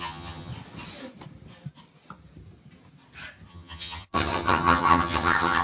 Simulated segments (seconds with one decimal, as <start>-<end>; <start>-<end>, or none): 0.0-0.5; 3.5-5.6